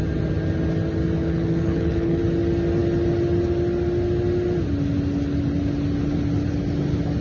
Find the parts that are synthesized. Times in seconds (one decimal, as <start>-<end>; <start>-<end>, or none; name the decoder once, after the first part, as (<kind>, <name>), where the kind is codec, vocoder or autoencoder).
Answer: 1.2-2.2 (codec, HILCodec)